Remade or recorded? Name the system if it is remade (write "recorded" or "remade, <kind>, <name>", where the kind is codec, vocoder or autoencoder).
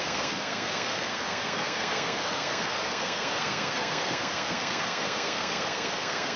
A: remade, codec, SNAC